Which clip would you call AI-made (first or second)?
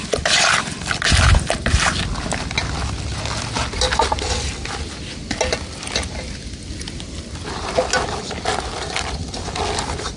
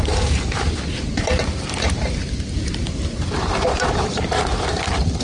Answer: second